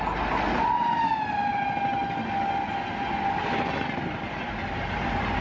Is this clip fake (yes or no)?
no